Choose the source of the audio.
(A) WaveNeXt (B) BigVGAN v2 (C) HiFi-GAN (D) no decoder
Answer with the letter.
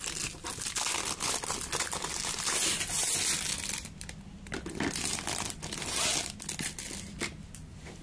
D